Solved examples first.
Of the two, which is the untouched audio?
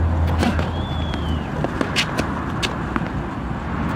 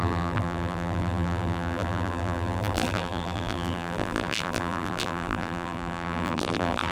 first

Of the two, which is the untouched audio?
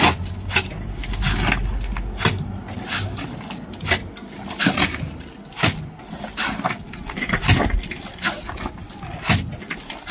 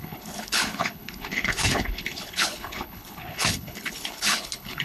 first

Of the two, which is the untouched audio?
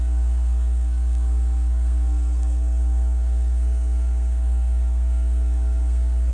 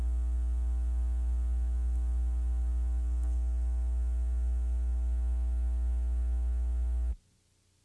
second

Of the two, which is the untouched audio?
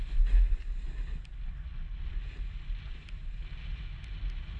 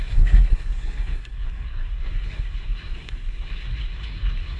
first